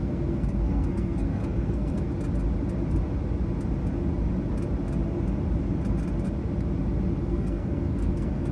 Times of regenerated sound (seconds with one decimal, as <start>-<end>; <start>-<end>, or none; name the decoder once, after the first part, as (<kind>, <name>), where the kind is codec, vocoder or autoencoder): 0.0-2.1 (codec, SNAC); 7.2-8.5